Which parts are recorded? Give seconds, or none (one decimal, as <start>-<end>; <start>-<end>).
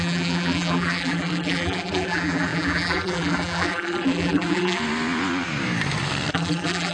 4.8-6.3